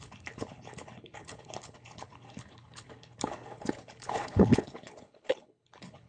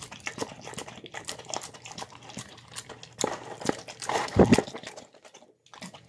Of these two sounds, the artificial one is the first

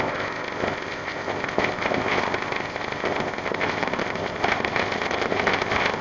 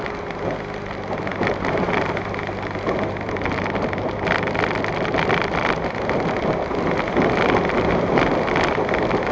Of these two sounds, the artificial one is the first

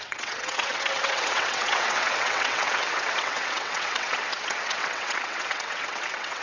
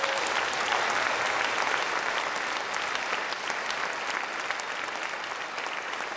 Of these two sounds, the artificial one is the first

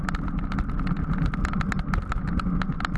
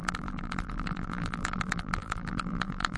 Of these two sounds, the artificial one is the second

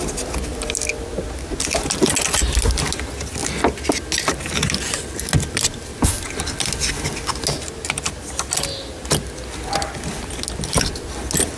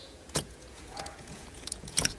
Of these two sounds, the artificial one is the second